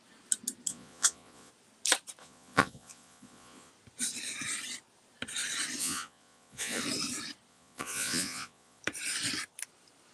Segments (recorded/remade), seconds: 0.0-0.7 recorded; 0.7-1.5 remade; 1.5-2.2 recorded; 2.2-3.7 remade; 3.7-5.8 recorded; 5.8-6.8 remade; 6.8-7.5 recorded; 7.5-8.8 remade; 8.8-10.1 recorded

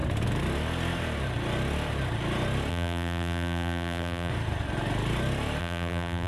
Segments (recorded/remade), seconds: 0.0-2.7 recorded; 2.7-4.3 remade; 4.3-5.6 recorded; 5.6-6.3 remade

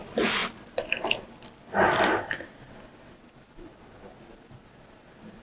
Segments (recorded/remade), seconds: 0.0-5.4 recorded

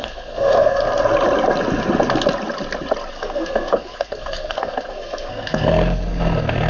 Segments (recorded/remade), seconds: 0.0-0.8 remade; 0.8-3.1 recorded; 3.1-6.7 remade

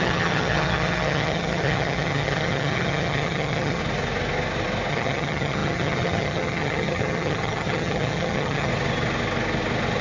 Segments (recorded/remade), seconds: 0.0-3.8 remade; 3.8-4.9 recorded; 4.9-8.7 remade; 8.7-10.0 recorded

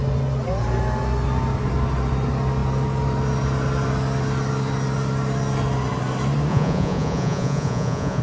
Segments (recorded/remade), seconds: 0.0-6.5 recorded; 6.5-8.2 remade

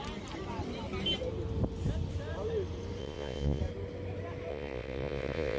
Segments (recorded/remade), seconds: 0.0-3.0 recorded; 3.0-3.6 remade; 3.6-4.5 recorded; 4.5-5.6 remade

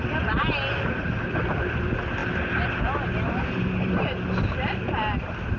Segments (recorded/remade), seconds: 0.0-5.6 recorded